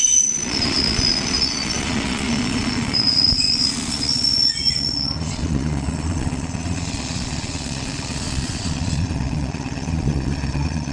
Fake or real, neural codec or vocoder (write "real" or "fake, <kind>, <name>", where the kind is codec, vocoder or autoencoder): fake, vocoder, Vocos